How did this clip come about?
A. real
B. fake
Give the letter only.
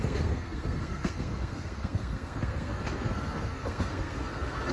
B